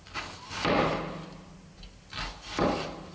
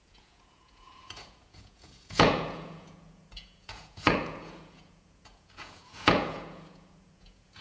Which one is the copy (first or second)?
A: second